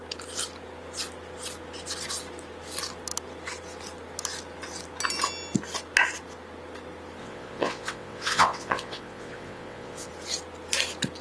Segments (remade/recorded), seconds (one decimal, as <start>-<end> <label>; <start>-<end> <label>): 0.0-7.2 recorded; 7.2-10.1 remade; 10.1-11.2 recorded